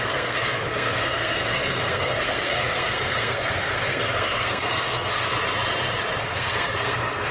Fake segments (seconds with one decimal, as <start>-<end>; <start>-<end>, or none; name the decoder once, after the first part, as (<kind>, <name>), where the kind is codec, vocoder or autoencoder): 0.0-5.3 (codec, SNAC); 6.2-7.3